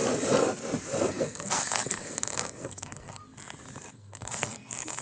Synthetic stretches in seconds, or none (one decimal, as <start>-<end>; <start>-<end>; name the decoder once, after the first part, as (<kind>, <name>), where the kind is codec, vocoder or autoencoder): 1.1-3.2 (codec, SNAC); 3.9-5.0